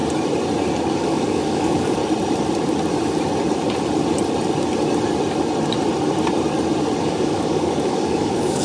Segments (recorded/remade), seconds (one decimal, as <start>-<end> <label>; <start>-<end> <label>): 0.0-0.8 recorded; 0.8-2.0 remade; 2.0-7.0 recorded; 7.0-8.6 remade